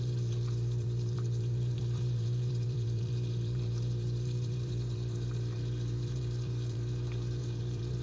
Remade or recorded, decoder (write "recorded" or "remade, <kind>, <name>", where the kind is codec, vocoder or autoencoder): remade, vocoder, BigVGAN v2